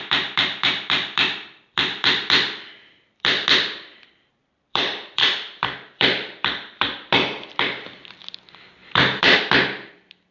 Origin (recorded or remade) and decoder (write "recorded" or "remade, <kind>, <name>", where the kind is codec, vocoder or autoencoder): remade, vocoder, BigVGAN v2